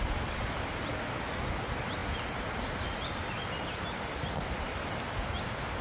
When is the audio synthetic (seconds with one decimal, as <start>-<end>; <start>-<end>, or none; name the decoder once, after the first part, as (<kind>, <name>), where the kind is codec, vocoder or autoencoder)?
none